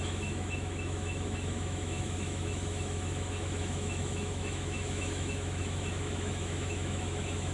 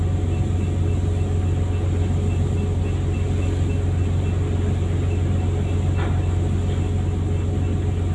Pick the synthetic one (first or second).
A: first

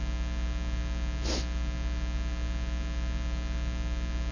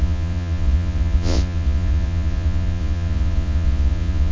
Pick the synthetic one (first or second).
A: second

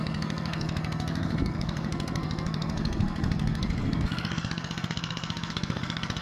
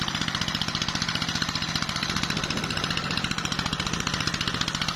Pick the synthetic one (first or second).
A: first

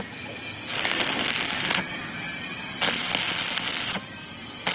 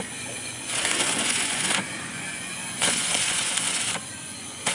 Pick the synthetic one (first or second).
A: second